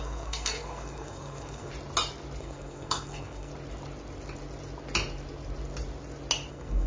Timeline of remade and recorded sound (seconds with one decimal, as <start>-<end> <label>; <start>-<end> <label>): 0.0-1.7 remade; 1.7-2.4 recorded; 2.4-3.5 remade; 3.5-6.5 recorded; 6.5-6.9 remade